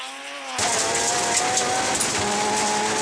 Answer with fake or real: real